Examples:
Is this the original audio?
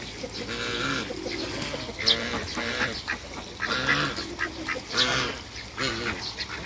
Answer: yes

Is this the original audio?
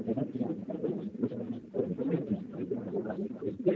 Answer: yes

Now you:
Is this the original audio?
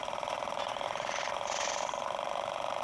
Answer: no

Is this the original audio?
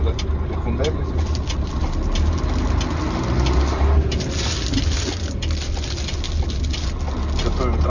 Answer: yes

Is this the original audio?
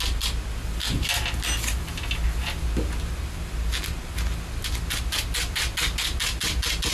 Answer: yes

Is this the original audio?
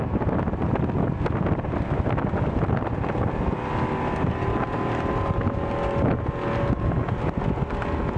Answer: yes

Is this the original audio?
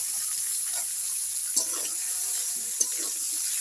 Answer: yes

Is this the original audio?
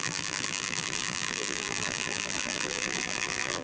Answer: no